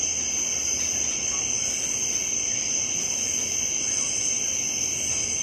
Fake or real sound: real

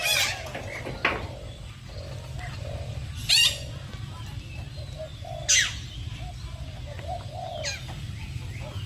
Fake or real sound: real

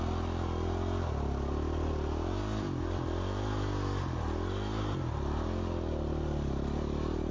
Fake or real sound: real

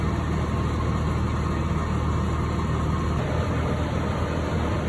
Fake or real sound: real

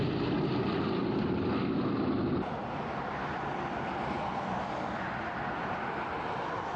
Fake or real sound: real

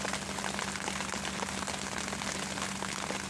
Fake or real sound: real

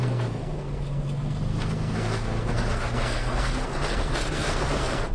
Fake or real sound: fake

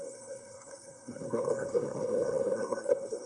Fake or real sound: fake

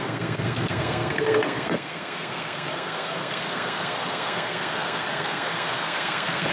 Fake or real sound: fake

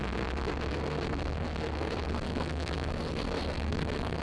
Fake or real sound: fake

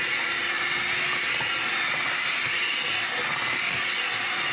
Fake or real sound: real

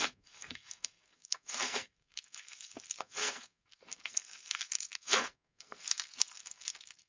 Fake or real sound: fake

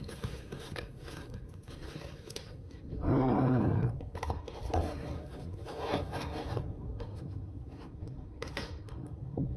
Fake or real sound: fake